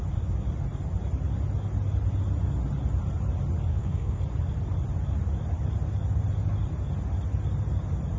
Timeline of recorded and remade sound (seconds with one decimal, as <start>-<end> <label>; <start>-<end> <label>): 0.0-3.7 recorded; 3.7-4.2 remade; 4.2-8.2 recorded